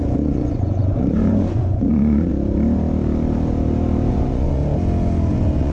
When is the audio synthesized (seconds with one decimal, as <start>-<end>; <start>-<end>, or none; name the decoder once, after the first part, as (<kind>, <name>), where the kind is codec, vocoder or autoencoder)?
0.0-2.3 (vocoder, Vocos); 4.1-4.6; 5.3-5.7